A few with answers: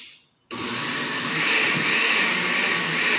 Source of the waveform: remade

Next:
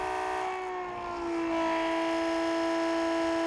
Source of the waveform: recorded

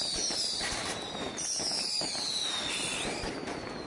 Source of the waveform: remade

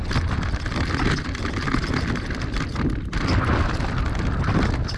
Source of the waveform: recorded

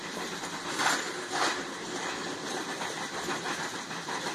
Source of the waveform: recorded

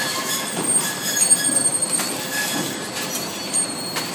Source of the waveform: remade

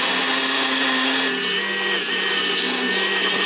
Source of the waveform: recorded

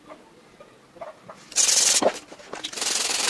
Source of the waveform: recorded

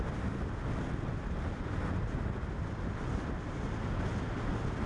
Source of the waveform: recorded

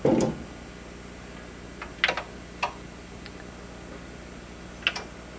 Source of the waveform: recorded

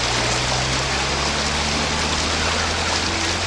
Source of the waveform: recorded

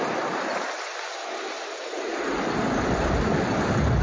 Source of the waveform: recorded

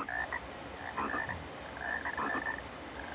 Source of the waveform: recorded